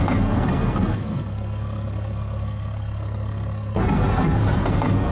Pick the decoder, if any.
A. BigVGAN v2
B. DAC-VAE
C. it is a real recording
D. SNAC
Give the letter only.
D